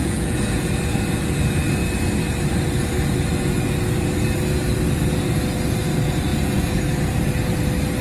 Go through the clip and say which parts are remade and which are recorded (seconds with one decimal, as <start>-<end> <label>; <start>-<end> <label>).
0.0-0.7 remade; 0.7-6.3 recorded; 6.3-6.8 remade; 6.8-8.0 recorded